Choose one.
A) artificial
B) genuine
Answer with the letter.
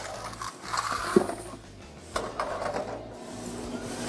B